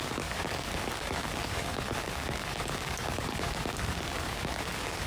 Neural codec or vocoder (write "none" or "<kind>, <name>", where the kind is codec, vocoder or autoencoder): codec, DAC